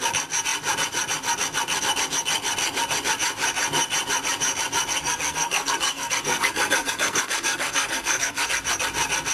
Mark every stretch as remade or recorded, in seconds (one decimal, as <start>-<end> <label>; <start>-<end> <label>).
0.0-5.0 recorded; 5.0-8.5 remade; 8.5-9.3 recorded